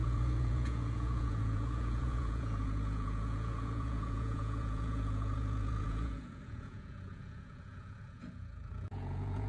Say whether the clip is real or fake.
fake